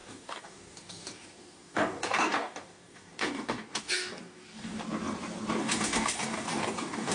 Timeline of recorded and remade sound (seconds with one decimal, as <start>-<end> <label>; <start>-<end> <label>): 0.0-4.8 remade; 4.8-5.6 recorded; 5.6-7.1 remade